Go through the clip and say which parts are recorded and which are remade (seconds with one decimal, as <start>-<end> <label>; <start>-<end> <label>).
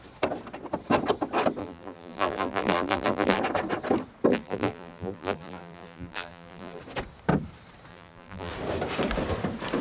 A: 0.0-1.6 recorded; 1.6-3.4 remade; 3.4-4.3 recorded; 4.3-6.8 remade; 6.8-7.9 recorded; 7.9-8.5 remade; 8.5-9.8 recorded